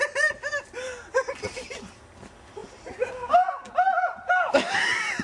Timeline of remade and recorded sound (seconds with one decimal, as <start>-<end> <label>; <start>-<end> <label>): 0.0-5.2 recorded

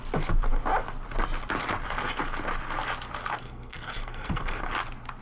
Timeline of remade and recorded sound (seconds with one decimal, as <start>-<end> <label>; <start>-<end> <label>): 0.0-3.4 recorded; 3.4-4.6 remade; 4.6-5.2 recorded